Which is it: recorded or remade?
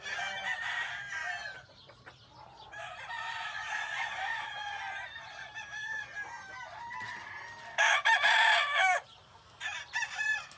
recorded